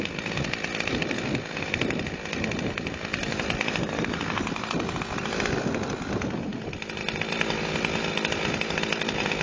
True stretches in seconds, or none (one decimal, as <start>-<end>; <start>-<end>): 0.0-9.4